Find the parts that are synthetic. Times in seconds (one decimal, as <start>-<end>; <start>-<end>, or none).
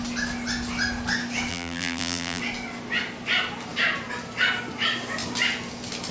1.5-2.4